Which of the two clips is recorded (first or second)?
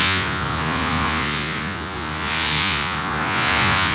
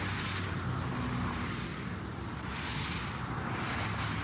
second